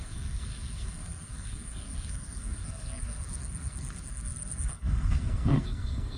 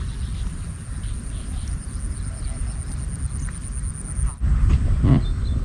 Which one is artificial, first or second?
first